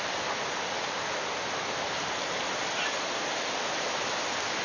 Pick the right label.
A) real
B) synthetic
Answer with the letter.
A